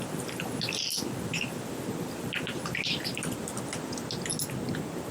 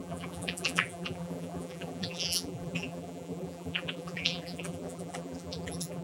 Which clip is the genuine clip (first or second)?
first